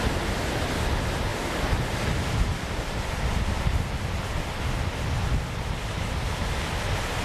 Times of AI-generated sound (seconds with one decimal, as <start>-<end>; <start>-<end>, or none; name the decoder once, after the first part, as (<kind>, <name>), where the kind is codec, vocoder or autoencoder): 1.3-4.8 (vocoder, BigVGAN v2)